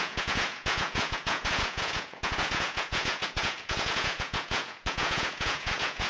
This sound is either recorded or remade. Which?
remade